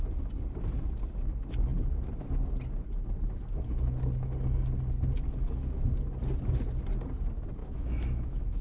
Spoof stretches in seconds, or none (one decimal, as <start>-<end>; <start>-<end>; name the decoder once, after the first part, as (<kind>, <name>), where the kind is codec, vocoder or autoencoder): 7.6-8.6 (autoencoder, DAC-VAE)